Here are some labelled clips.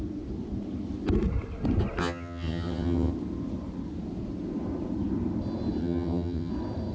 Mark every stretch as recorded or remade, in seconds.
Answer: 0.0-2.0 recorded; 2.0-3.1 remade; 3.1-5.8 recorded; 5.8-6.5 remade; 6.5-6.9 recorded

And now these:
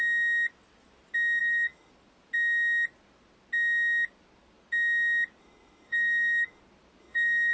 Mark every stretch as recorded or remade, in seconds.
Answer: 0.0-1.4 recorded; 1.4-1.9 remade; 1.9-5.4 recorded; 5.4-6.6 remade; 6.6-7.0 recorded; 7.0-7.5 remade

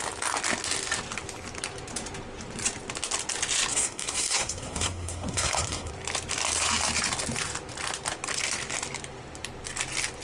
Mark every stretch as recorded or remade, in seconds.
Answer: 0.0-3.7 recorded; 3.7-5.9 remade; 5.9-10.2 recorded

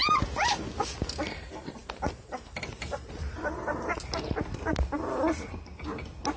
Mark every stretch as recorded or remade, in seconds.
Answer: 0.0-6.4 recorded

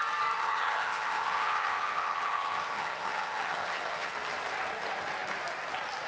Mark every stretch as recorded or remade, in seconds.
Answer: 0.0-0.4 recorded; 0.4-4.1 remade; 4.1-6.1 recorded

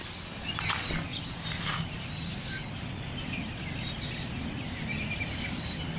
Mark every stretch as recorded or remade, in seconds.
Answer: 0.0-1.1 recorded; 1.1-2.6 remade; 2.6-6.0 recorded

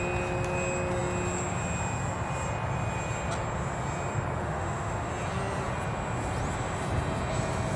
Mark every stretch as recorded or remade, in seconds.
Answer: 0.0-4.4 recorded; 4.4-5.1 remade; 5.1-7.8 recorded